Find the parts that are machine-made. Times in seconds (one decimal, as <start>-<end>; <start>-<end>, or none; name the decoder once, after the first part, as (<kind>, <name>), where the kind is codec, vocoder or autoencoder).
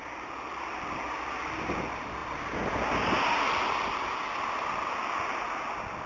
none